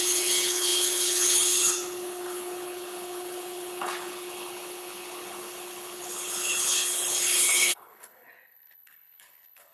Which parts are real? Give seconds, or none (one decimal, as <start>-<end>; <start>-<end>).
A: none